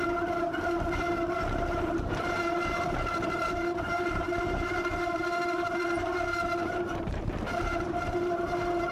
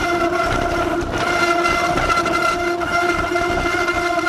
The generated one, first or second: first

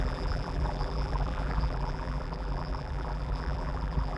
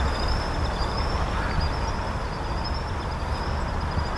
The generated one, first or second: first